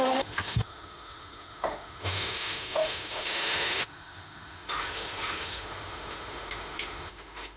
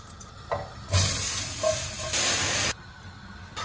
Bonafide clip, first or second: second